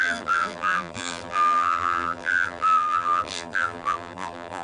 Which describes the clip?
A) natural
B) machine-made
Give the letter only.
B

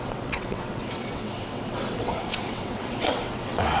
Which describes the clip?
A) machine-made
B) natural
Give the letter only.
A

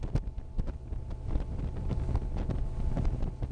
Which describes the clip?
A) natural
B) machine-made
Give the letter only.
A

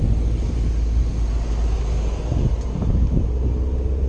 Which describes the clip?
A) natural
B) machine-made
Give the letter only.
A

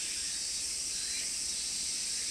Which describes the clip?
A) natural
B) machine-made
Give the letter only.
A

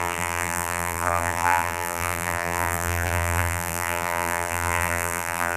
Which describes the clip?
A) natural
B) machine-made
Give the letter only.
B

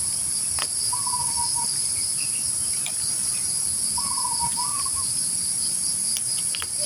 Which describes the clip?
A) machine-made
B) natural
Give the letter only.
B